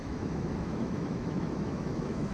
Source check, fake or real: fake